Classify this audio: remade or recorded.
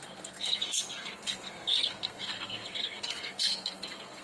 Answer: remade